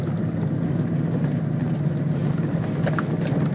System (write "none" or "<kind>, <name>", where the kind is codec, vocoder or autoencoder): none